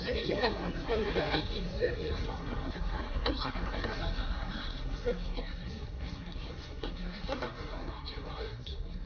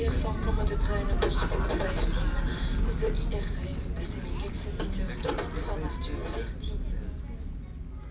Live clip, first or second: second